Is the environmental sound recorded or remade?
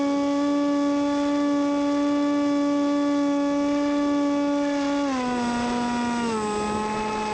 recorded